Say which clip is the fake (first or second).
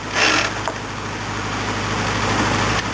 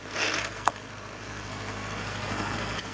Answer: second